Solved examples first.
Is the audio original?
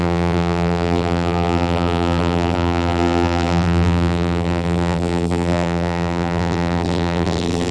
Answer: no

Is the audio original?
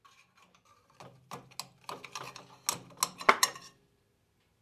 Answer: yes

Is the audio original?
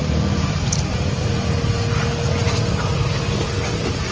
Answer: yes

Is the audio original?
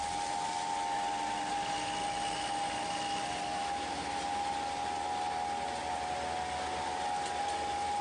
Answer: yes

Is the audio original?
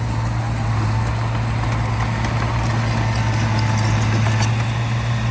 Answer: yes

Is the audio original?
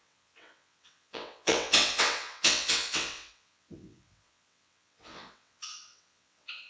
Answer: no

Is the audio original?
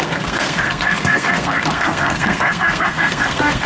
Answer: no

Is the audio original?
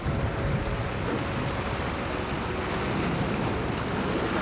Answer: yes